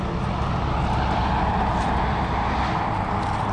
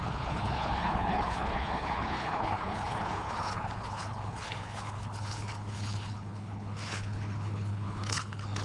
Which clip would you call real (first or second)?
first